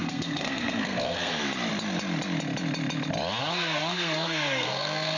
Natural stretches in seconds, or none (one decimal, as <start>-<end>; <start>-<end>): 1.3-3.4